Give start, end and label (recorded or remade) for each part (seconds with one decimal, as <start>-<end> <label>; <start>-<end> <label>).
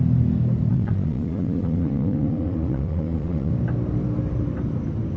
0.0-0.7 recorded; 0.7-3.5 remade; 3.5-5.2 recorded